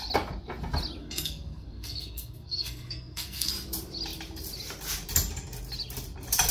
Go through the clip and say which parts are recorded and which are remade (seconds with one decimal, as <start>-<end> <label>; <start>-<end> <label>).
0.0-1.0 recorded; 1.0-3.5 remade; 3.5-6.5 recorded